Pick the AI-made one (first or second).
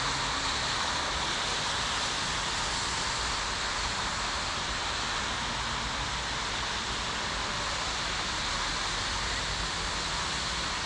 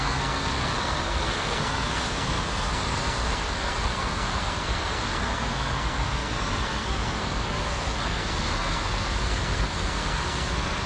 second